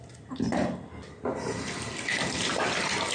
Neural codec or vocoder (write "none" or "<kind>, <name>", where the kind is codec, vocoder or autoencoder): none